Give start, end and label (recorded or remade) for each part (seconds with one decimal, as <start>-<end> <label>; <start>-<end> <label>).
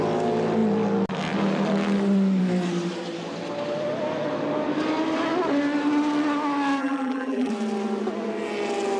0.0-6.8 recorded; 6.8-7.5 remade; 7.5-9.0 recorded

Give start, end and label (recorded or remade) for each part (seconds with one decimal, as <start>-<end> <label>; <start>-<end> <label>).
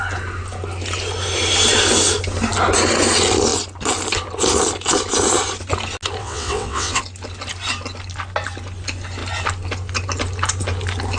0.0-6.2 recorded; 6.2-7.0 remade; 7.0-11.2 recorded